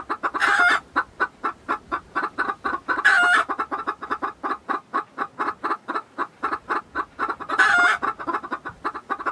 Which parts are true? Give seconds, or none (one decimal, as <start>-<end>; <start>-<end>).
0.0-6.2; 6.8-9.3